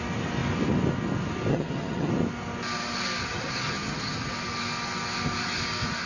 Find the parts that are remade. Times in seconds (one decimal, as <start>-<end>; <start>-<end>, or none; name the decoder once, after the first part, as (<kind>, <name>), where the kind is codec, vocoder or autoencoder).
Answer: 1.5-2.1 (vocoder, HiFi-GAN); 3.2-4.3